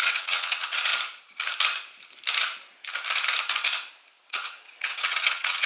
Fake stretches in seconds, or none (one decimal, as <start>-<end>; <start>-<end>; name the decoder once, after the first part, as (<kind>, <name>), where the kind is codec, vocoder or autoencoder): 0.0-0.9 (vocoder, WaveNeXt); 4.3-5.7